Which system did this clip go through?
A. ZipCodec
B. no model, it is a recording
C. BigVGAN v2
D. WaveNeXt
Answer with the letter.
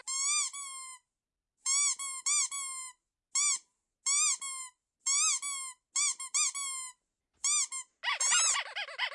B